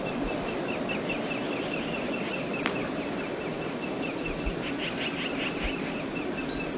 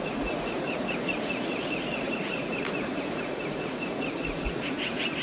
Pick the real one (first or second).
first